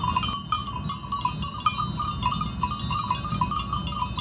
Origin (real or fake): real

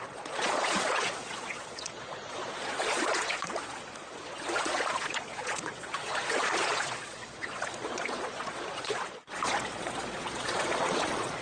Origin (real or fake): fake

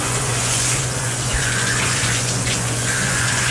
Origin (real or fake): fake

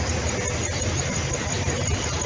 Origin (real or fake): real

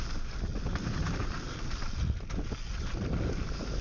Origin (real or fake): real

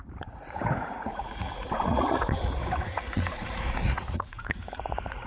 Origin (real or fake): fake